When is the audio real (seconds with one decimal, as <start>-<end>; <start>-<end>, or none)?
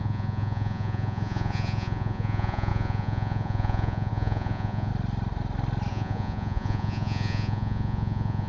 4.9-5.9